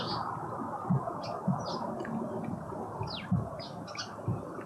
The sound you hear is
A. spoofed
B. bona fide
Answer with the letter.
B